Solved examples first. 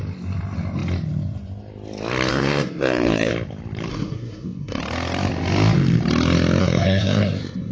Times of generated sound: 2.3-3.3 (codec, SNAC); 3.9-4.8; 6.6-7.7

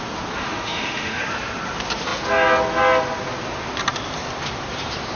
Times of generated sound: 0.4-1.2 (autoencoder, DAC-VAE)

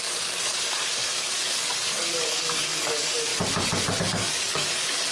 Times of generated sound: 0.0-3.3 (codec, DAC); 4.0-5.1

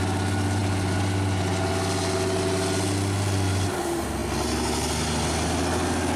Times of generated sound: none